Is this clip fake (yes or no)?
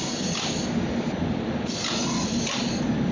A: no